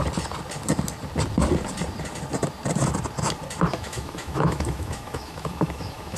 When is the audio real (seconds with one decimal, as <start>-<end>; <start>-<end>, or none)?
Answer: 0.0-3.7